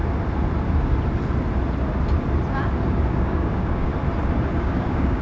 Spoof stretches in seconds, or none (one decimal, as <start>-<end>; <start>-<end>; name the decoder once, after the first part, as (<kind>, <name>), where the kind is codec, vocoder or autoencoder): 3.1-3.9 (codec, DAC); 4.6-5.2